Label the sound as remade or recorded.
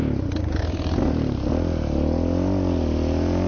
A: recorded